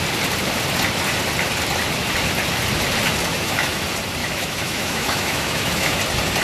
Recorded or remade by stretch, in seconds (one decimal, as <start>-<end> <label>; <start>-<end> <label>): 0.0-3.3 recorded; 3.3-3.8 remade; 3.8-4.2 recorded; 4.2-6.0 remade; 6.0-6.4 recorded